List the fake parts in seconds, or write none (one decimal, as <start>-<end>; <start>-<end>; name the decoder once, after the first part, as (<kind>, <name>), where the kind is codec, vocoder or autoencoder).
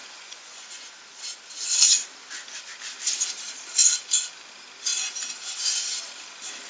0.0-0.9 (vocoder, Vocos)